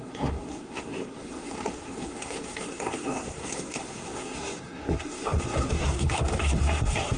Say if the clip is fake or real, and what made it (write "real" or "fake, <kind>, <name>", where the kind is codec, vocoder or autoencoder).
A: fake, codec, SNAC